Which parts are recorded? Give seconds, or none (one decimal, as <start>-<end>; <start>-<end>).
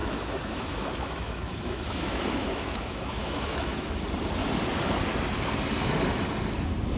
3.9-7.0